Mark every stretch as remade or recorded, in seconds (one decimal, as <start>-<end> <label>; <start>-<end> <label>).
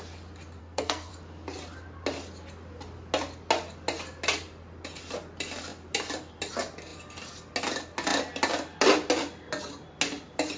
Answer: 0.0-0.6 recorded; 0.6-1.1 remade; 1.1-10.6 recorded